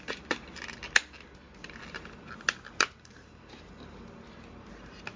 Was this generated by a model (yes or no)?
no